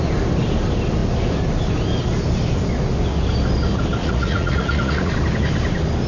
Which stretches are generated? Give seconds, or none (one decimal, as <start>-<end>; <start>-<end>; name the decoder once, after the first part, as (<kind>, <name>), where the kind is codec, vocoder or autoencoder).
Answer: 4.0-5.1 (vocoder, Vocos)